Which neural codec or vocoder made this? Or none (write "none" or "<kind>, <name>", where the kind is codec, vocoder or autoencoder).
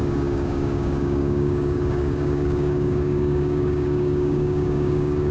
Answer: codec, DAC